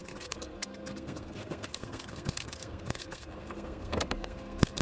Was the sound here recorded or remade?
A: remade